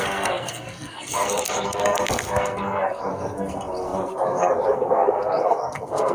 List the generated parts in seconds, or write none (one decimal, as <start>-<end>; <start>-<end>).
0.0-6.1